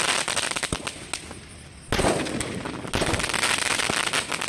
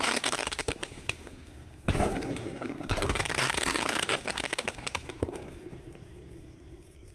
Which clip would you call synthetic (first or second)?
second